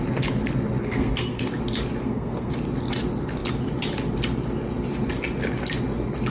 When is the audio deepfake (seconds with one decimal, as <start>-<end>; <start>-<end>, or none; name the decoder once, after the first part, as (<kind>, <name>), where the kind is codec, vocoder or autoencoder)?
0.8-1.4 (codec, SNAC); 2.0-2.5